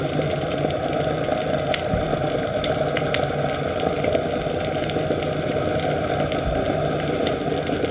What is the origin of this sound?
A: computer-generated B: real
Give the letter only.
B